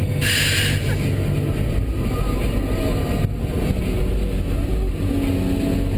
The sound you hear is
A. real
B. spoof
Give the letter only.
A